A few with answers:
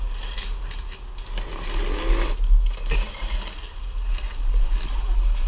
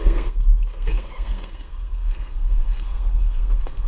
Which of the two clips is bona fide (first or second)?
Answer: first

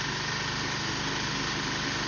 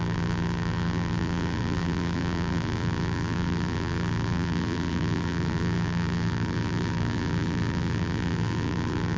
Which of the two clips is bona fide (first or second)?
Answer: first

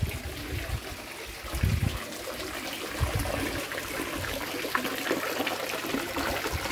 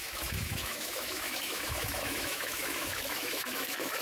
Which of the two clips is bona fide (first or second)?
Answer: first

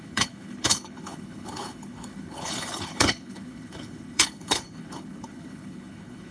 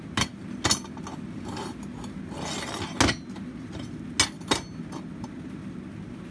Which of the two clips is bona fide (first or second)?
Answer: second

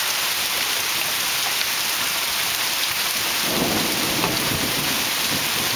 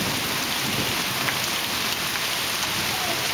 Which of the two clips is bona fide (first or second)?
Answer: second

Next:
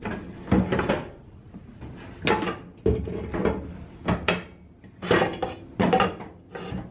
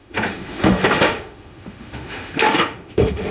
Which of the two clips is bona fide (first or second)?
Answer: first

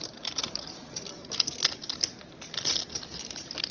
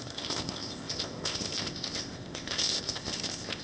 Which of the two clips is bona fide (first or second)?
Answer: first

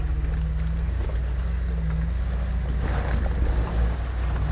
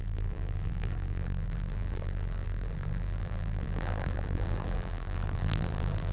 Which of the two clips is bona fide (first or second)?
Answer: first